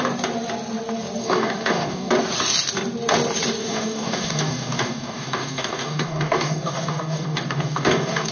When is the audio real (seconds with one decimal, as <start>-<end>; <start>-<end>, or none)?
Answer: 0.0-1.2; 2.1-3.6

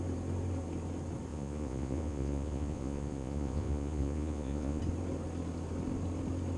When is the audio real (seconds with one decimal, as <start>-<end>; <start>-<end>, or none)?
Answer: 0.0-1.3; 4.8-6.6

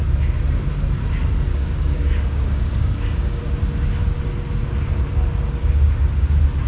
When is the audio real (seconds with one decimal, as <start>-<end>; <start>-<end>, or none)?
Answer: 0.0-1.5; 3.4-6.7

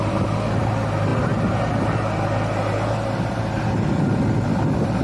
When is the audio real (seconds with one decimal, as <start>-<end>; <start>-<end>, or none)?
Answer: 0.0-5.0